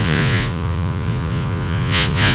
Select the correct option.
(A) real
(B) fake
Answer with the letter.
B